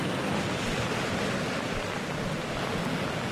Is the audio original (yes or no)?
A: yes